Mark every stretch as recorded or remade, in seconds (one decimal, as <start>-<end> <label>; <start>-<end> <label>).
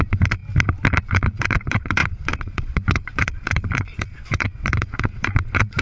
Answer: 0.0-0.4 remade; 0.4-1.0 recorded; 1.0-5.8 remade